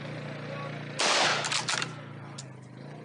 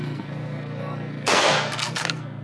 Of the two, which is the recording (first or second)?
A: first